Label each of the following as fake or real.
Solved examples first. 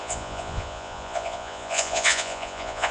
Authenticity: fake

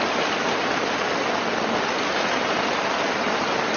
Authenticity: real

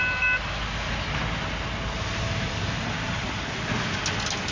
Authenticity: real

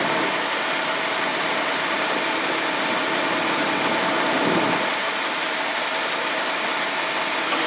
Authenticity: fake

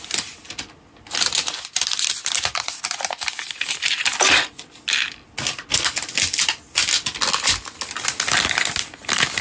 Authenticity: real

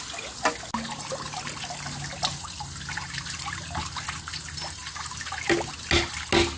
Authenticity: real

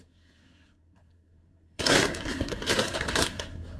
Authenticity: fake